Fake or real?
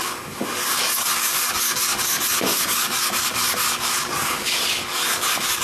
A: fake